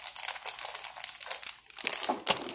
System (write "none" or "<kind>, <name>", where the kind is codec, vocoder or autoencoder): none